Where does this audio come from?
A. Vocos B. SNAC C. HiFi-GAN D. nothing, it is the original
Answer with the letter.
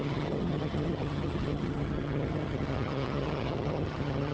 C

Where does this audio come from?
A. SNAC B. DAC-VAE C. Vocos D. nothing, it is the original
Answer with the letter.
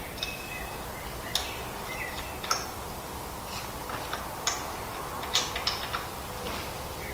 D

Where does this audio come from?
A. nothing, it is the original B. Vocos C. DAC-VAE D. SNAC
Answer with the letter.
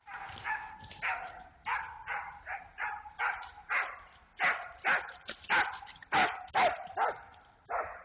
A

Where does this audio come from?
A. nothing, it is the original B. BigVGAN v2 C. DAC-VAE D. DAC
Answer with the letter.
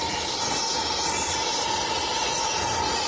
A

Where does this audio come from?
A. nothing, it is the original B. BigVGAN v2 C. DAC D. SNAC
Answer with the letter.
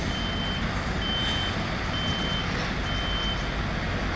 A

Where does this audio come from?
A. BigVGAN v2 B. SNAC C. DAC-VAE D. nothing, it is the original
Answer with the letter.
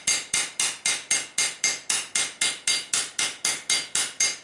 D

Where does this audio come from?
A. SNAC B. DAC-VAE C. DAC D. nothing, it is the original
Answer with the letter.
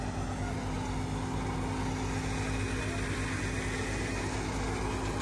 D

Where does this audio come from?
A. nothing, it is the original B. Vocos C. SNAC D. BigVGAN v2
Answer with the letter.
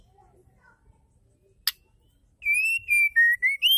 A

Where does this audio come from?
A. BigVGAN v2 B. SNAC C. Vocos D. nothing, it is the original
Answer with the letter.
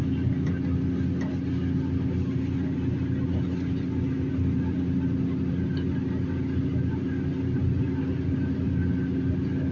D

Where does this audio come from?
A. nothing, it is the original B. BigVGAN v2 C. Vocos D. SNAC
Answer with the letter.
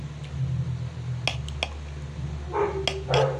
A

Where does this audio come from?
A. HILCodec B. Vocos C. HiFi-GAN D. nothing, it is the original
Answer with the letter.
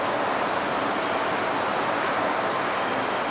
D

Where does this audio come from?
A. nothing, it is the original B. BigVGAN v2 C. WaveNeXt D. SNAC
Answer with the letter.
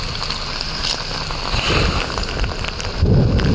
A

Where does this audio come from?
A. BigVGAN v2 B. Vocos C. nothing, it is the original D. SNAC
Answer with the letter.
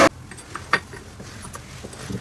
C